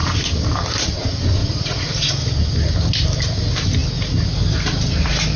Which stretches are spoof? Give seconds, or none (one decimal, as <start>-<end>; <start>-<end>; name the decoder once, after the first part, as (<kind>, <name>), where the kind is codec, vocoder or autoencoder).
1.4-2.1 (vocoder, Vocos)